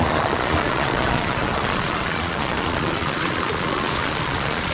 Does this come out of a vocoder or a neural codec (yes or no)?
yes